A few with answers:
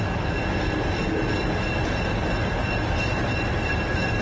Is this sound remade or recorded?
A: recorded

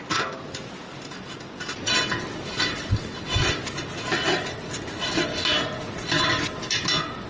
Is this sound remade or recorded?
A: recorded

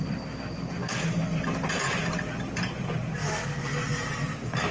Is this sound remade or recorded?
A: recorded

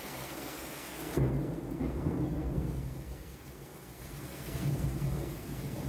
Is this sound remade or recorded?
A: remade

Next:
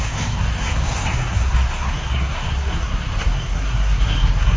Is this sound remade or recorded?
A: remade